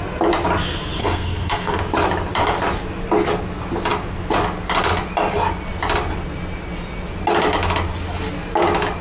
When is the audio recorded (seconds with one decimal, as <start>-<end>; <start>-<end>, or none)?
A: 0.0-1.0; 1.8-9.0